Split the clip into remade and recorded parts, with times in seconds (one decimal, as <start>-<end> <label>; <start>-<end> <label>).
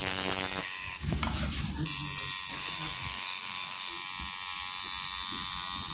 0.0-0.6 recorded; 0.6-1.2 remade; 1.2-2.5 recorded; 2.5-3.9 remade; 3.9-5.9 recorded